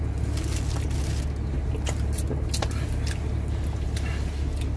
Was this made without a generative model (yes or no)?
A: yes